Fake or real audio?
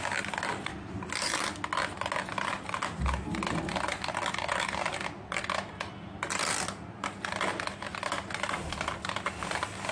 real